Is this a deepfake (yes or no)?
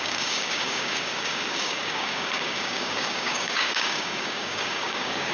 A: yes